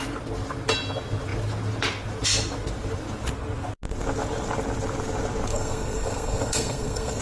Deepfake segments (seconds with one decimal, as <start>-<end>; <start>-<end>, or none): 5.5-7.2